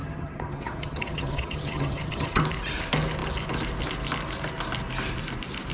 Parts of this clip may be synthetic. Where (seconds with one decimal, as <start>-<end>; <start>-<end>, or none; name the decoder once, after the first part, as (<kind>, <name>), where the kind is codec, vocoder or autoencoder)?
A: 0.0-2.4 (vocoder, HiFi-GAN)

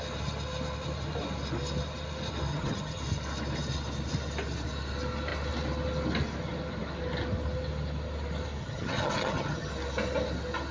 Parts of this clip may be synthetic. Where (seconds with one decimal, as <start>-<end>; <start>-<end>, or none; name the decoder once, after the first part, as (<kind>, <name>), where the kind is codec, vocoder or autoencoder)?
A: 2.5-3.0 (vocoder, HiFi-GAN); 8.6-9.7

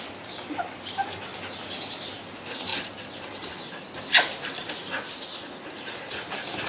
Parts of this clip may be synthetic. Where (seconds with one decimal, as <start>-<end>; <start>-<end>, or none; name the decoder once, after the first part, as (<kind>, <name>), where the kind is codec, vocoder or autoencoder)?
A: none

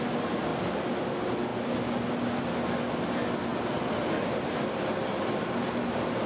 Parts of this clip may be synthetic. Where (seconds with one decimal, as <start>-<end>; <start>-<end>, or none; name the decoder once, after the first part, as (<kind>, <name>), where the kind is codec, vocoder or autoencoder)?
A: none

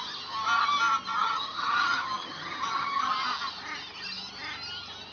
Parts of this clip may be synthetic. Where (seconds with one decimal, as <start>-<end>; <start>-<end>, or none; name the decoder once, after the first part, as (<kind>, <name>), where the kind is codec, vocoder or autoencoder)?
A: 1.2-3.1 (vocoder, HiFi-GAN)

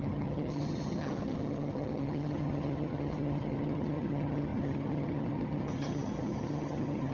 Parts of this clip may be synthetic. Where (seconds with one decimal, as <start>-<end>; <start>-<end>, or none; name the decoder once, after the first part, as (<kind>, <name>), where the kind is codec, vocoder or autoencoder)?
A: 0.0-7.1 (vocoder, HiFi-GAN)

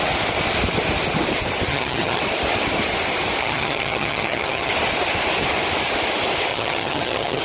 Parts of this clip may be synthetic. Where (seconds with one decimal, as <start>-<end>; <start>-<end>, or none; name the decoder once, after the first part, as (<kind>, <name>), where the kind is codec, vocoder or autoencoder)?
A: 1.7-2.2 (vocoder, HiFi-GAN); 3.4-4.7; 6.5-7.4

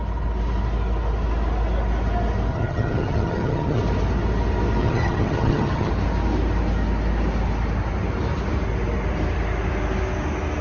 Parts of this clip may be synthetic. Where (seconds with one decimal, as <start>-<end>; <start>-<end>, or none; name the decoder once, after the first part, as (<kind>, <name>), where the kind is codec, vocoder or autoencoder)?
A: 2.5-3.8 (vocoder, HiFi-GAN); 4.8-5.9